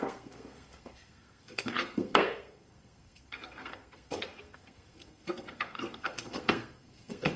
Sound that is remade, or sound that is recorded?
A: remade